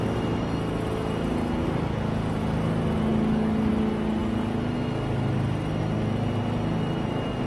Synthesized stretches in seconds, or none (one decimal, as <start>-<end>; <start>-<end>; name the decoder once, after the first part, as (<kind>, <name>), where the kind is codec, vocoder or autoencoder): 3.1-3.7 (codec, DAC)